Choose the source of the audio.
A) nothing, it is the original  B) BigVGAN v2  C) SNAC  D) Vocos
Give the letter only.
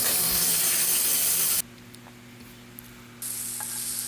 A